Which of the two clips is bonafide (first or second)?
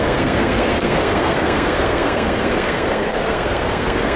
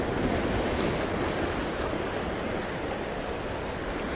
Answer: second